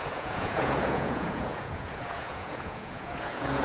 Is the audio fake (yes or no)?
yes